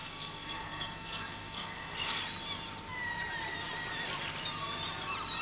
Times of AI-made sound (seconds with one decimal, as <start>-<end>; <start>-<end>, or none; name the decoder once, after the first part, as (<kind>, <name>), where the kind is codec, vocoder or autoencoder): 0.0-2.2 (codec, SNAC)